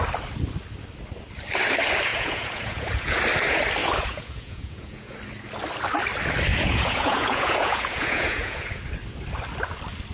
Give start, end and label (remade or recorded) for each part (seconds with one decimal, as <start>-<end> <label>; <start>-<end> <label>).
0.0-2.1 recorded; 2.1-3.2 remade; 3.2-3.8 recorded; 3.8-5.2 remade; 5.2-6.5 recorded; 6.5-8.8 remade; 8.8-10.1 recorded